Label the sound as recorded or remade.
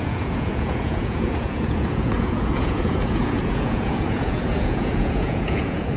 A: remade